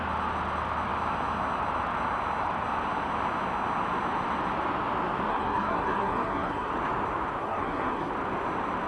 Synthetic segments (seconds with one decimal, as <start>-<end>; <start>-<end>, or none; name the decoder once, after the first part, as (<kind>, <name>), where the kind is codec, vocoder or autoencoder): 5.3-6.7 (codec, SNAC); 7.4-8.1